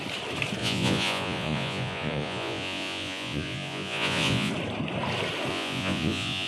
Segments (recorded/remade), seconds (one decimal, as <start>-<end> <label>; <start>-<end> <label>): 0.0-0.6 recorded; 0.6-4.5 remade; 4.5-5.5 recorded; 5.5-6.5 remade